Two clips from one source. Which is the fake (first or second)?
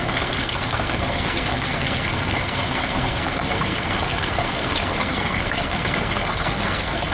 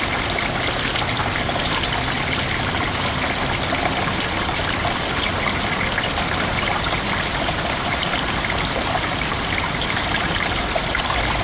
first